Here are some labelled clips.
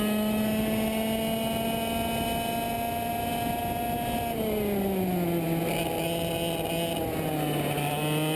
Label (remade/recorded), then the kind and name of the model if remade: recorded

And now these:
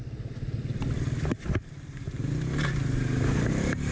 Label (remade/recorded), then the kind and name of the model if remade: recorded